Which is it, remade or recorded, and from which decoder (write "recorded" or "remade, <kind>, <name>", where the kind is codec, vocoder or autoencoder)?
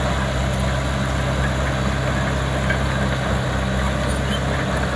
recorded